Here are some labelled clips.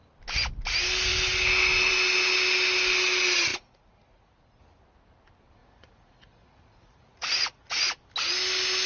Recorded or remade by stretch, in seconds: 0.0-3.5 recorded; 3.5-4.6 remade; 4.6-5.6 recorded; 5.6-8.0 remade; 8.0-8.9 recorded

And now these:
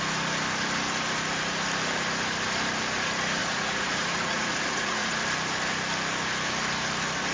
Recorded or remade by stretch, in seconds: 0.0-3.4 recorded; 3.4-5.1 remade; 5.1-7.3 recorded